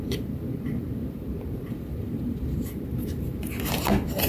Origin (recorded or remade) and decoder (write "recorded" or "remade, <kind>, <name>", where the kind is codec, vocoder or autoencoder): remade, vocoder, BigVGAN v2